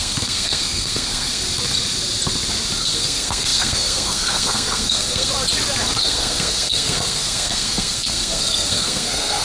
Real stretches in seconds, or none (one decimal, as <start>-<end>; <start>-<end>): 1.4-2.8; 5.3-6.0